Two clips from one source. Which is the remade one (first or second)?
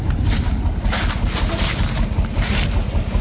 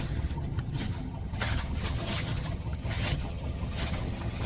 second